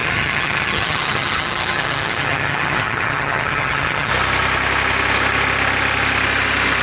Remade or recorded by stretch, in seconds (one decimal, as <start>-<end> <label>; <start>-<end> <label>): 0.0-4.1 remade; 4.1-6.8 recorded